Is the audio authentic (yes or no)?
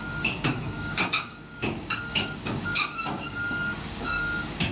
no